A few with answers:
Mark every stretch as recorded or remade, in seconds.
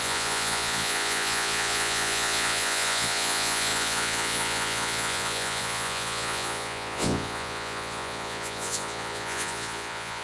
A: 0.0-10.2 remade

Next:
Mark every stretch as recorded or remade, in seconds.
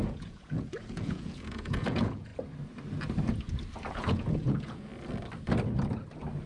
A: 0.0-2.3 remade; 2.3-3.9 recorded; 3.9-4.9 remade; 4.9-6.5 recorded